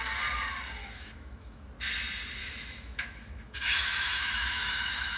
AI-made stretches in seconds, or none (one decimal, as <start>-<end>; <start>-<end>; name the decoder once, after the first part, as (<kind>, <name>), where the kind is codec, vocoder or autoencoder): 0.8-1.7 (autoencoder, DAC-VAE); 2.4-5.2